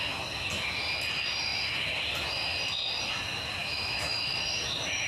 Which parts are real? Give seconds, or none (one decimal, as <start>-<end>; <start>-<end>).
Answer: 0.0-3.6; 4.2-5.1